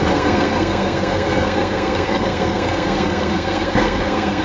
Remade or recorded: remade